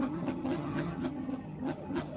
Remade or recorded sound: remade